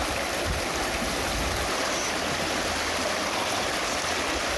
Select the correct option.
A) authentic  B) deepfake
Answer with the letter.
A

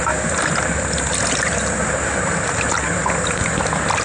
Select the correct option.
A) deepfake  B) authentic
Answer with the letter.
B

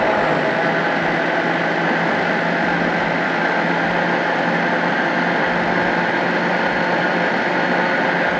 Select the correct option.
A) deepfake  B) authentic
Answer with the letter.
B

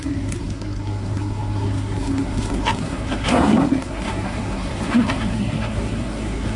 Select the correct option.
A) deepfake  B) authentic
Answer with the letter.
A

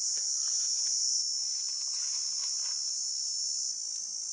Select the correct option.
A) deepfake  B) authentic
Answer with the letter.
B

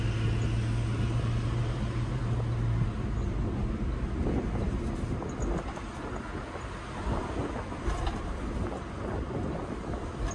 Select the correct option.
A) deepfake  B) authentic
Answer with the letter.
B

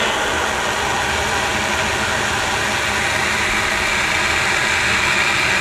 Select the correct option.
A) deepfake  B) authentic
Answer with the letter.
B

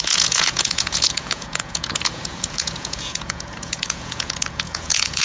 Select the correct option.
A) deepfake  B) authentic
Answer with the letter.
A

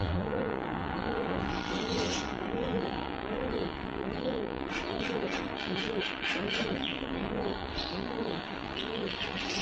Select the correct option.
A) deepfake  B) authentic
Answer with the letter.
A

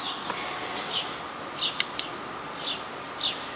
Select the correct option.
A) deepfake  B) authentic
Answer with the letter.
B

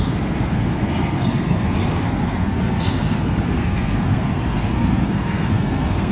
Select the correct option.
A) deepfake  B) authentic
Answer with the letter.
A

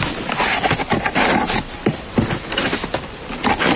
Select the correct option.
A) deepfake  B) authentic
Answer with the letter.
B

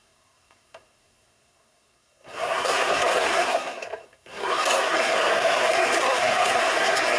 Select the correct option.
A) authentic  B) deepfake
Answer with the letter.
B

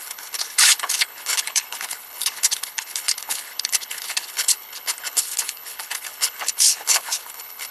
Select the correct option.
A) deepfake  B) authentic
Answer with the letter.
A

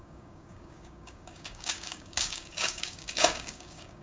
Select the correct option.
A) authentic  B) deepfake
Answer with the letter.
B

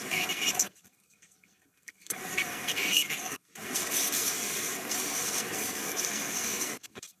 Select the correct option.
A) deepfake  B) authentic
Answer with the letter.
A